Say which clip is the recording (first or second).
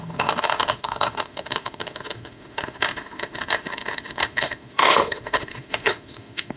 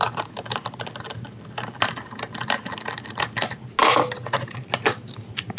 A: second